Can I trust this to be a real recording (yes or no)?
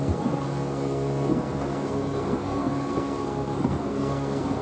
no